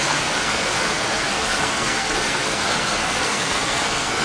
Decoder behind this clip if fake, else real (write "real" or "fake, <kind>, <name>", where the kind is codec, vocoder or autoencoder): fake, codec, SNAC